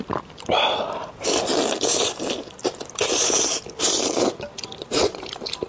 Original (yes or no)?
yes